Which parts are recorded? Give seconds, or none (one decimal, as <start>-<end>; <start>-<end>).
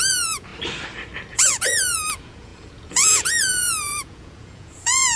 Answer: 0.5-1.3